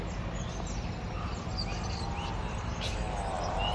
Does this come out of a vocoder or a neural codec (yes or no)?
no